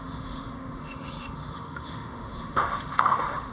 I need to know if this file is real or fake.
fake